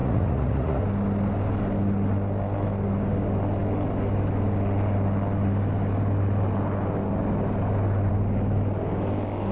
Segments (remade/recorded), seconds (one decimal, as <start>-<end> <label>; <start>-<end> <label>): 0.0-0.8 remade; 0.8-9.5 recorded